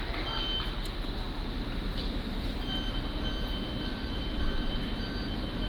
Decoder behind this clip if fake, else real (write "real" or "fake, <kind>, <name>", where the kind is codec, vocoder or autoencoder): real